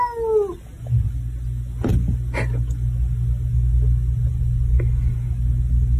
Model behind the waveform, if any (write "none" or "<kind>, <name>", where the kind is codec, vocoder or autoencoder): none